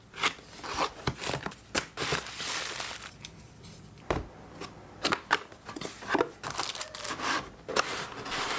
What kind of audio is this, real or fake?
real